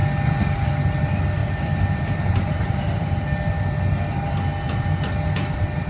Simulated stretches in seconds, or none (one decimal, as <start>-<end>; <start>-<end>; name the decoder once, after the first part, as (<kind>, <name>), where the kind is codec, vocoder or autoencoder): 1.4-3.2 (vocoder, BigVGAN v2)